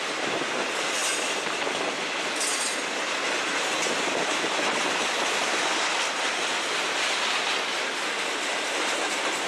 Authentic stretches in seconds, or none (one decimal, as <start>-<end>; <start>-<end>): 0.0-9.5